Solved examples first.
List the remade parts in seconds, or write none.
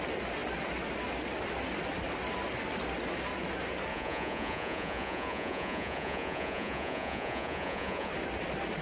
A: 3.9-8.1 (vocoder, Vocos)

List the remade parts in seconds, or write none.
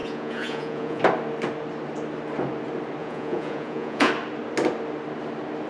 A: 0.0-1.0 (vocoder, Vocos); 3.0-4.1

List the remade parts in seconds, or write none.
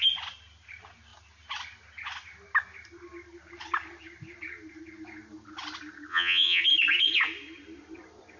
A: 6.1-6.6 (vocoder, Vocos)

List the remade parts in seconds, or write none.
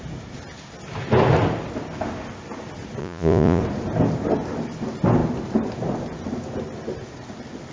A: 3.0-3.6 (vocoder, Vocos)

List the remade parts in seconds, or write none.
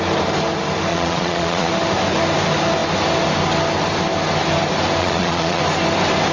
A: 0.9-1.7 (vocoder, Vocos); 5.0-5.6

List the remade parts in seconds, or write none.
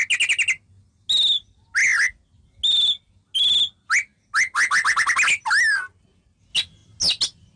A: none